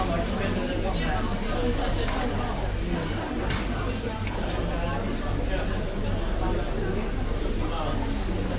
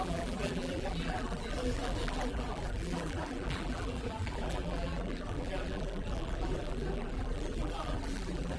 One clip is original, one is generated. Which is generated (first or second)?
second